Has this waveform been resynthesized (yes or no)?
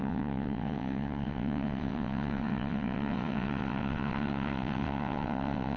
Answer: yes